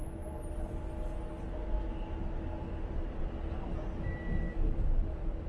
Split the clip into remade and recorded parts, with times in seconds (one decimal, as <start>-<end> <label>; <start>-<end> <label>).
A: 0.0-5.5 recorded